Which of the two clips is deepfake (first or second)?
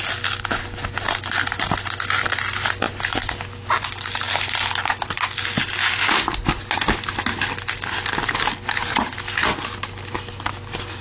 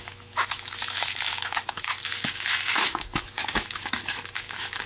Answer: second